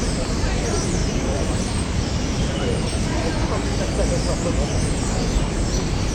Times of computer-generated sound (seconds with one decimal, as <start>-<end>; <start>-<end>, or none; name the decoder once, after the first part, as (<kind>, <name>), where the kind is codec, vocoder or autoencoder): 0.0-3.4 (vocoder, BigVGAN v2); 5.5-6.1

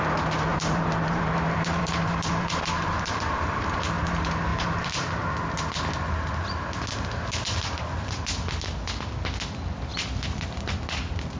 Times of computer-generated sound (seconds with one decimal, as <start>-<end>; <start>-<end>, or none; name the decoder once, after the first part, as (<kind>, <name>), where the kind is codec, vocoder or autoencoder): 0.5-4.1 (vocoder, BigVGAN v2); 4.5-5.3

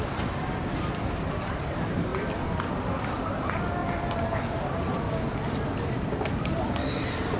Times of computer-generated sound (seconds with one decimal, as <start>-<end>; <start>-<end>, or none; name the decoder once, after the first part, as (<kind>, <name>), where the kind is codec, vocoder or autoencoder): 3.8-4.7 (vocoder, BigVGAN v2)

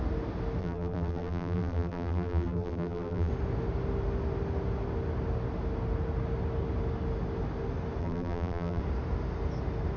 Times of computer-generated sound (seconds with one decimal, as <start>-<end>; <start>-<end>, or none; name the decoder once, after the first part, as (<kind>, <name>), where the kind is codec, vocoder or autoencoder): 0.6-3.3 (vocoder, BigVGAN v2); 8.0-8.8

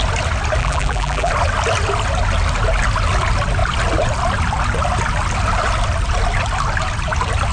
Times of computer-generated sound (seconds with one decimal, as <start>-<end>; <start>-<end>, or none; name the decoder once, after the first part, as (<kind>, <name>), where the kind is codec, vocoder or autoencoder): 0.6-1.3 (vocoder, BigVGAN v2)